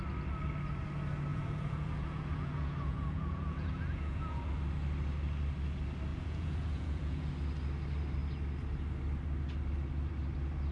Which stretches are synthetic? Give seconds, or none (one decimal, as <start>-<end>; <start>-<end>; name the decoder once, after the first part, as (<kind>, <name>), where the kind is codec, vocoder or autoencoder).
1.3-4.5 (vocoder, Vocos); 6.1-7.3

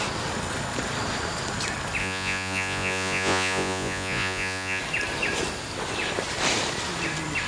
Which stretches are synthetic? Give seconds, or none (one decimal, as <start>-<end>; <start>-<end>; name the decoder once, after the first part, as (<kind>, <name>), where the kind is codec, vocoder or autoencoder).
2.0-4.8 (vocoder, Vocos)

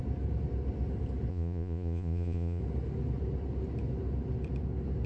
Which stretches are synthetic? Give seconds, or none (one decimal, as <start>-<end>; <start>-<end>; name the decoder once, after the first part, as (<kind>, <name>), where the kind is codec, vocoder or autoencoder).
1.3-2.6 (vocoder, Vocos)

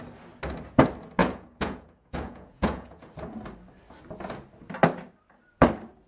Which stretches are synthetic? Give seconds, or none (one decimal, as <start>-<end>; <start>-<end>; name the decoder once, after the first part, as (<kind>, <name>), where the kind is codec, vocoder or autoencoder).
1.2-3.1 (vocoder, Vocos)

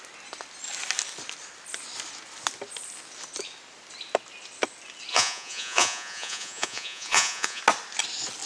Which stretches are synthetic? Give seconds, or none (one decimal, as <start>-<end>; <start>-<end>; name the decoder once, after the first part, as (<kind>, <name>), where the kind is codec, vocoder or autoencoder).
5.1-7.6 (vocoder, Vocos)

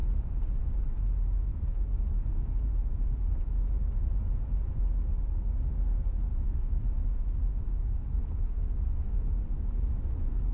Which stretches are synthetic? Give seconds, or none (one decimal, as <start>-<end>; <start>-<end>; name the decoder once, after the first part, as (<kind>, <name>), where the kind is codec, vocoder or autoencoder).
0.0-0.6 (vocoder, Vocos); 1.5-4.8; 6.3-9.3

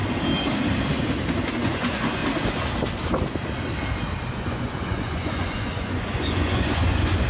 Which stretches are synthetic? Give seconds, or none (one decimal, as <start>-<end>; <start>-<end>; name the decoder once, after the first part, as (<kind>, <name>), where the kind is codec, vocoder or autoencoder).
1.5-2.2 (vocoder, Vocos); 4.3-7.3